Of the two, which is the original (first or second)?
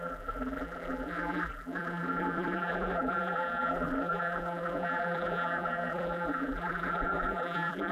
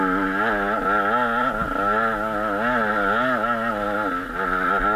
second